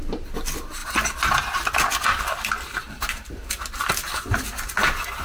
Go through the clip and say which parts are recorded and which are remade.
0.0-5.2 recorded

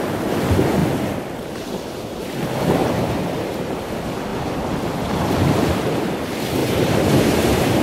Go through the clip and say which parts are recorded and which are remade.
0.0-2.8 recorded; 2.8-3.7 remade; 3.7-6.6 recorded; 6.6-7.8 remade

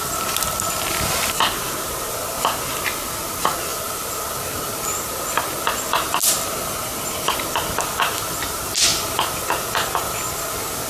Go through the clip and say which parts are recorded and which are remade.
0.0-3.7 recorded; 3.7-5.6 remade; 5.6-10.9 recorded

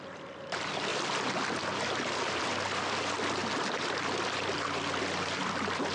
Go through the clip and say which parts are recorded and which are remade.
0.0-0.9 recorded; 0.9-2.5 remade; 2.5-3.4 recorded; 3.4-5.0 remade; 5.0-5.9 recorded